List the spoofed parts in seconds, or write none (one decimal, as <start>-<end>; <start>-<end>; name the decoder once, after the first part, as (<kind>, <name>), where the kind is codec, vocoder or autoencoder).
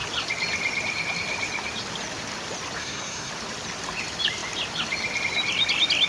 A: 2.8-3.3 (codec, SNAC)